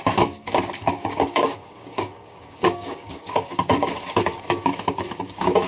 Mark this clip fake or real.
fake